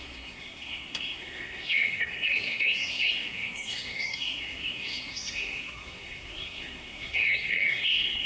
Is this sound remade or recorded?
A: remade